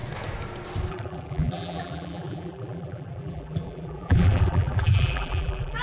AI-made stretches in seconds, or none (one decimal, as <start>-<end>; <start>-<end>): 0.9-5.8